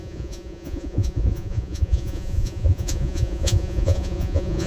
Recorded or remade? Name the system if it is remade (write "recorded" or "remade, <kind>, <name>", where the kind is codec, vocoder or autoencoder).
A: remade, vocoder, Vocos